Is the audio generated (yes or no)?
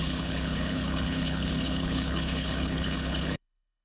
yes